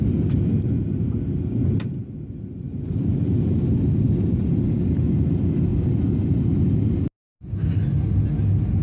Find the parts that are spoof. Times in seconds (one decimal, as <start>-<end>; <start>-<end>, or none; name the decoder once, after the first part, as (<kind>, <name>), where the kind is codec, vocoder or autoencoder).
none